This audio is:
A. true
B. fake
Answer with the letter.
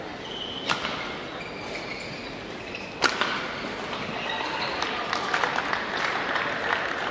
A